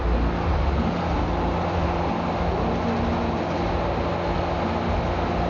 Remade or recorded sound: recorded